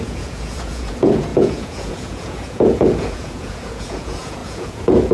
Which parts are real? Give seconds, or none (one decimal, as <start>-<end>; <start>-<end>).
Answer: none

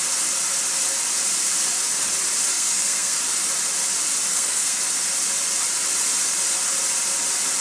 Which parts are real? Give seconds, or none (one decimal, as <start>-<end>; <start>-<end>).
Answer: 0.0-2.5; 3.2-4.3; 4.8-7.6

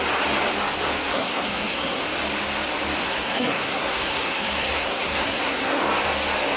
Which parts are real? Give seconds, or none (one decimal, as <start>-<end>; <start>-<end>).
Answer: 0.0-1.1; 2.0-3.0; 5.8-6.6

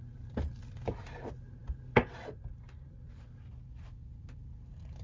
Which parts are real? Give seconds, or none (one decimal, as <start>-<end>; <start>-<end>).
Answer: 0.0-5.0

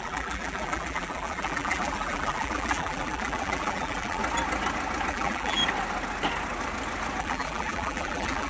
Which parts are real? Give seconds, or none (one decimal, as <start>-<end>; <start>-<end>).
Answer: 4.2-5.1; 5.6-7.2